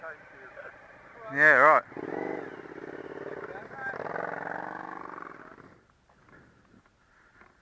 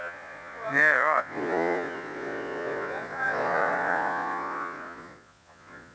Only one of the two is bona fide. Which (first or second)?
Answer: first